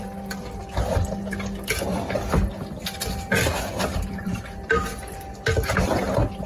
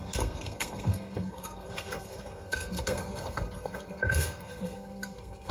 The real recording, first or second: first